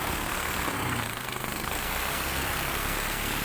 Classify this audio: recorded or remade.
remade